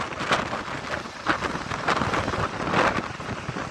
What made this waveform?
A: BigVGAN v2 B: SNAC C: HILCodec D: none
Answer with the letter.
D